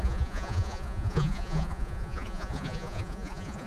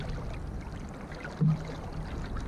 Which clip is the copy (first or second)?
first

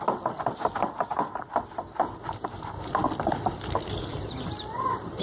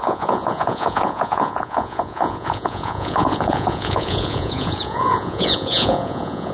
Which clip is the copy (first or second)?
second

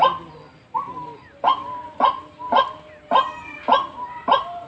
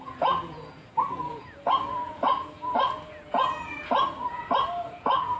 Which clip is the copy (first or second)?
second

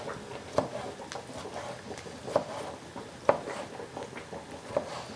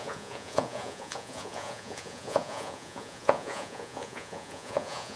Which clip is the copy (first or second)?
second